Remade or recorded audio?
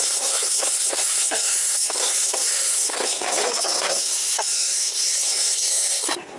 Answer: remade